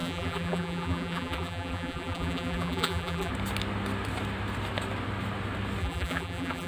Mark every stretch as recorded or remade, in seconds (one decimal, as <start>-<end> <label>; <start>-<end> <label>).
0.0-3.3 remade; 3.3-5.8 recorded; 5.8-6.7 remade